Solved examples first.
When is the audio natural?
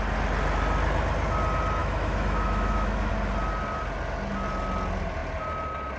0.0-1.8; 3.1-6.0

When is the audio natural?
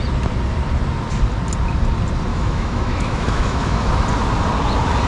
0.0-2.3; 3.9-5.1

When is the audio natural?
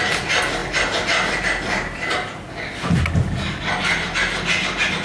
0.0-5.0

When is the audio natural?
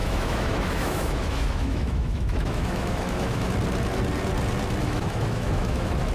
3.5-4.8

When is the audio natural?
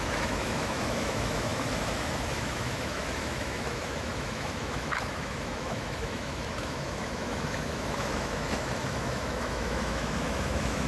none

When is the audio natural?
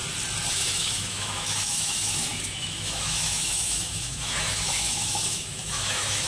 0.0-0.5